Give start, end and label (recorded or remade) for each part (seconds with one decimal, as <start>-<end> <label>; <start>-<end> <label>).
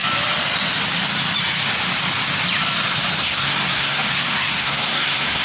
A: 0.0-3.2 recorded; 3.2-5.4 remade